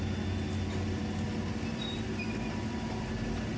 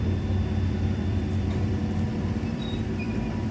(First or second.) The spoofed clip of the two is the second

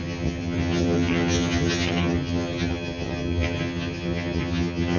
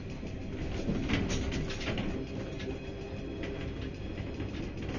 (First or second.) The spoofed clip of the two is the first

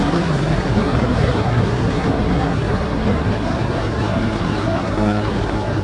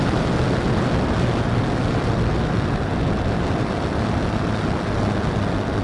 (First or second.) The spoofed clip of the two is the first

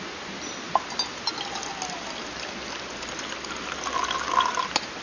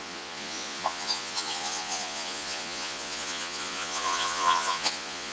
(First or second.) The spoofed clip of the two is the second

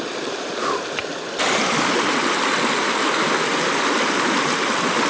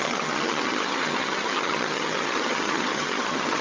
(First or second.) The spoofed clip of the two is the second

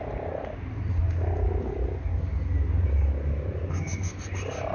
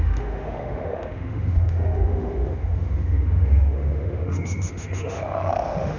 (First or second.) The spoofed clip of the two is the second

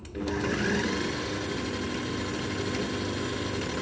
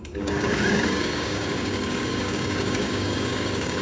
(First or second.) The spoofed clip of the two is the second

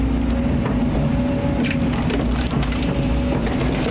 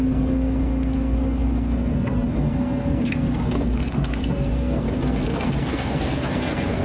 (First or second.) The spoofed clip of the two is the second